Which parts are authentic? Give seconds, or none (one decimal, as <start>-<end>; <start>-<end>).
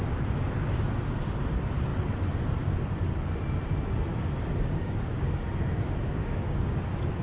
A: 0.0-4.1; 5.3-6.2; 6.8-7.2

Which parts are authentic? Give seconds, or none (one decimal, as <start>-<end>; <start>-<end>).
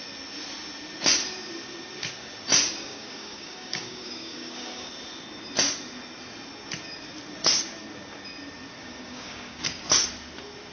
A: 0.0-2.8; 4.9-8.8; 9.9-10.7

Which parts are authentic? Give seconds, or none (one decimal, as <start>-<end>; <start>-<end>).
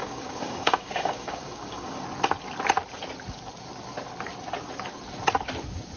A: 2.0-6.0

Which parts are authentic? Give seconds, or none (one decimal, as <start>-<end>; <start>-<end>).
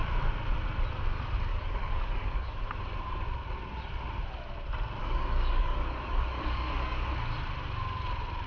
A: 0.0-1.5; 2.6-5.0; 7.1-8.5